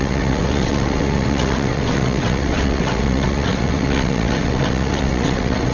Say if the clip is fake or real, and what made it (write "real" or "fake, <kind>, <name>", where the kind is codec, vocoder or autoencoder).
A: fake, vocoder, WaveNeXt